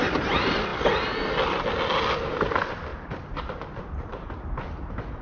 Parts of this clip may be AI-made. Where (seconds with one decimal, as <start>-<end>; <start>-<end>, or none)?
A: none